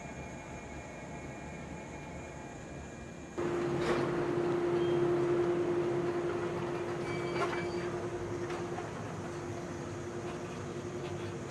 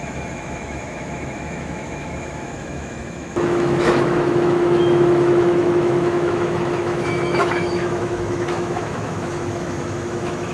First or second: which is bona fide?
first